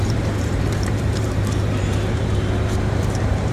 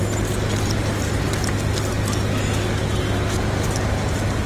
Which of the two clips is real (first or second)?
second